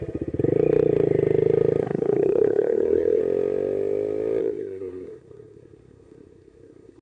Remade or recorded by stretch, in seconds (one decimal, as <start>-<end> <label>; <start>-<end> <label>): 0.0-1.8 recorded; 1.8-3.2 remade; 3.2-4.4 recorded; 4.4-7.0 remade